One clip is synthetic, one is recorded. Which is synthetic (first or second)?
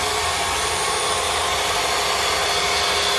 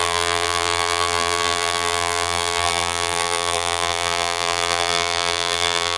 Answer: second